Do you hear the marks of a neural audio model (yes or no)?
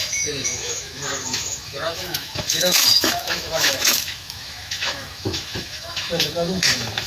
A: yes